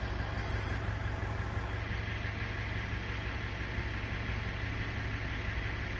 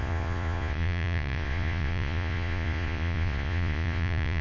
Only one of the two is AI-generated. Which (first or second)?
second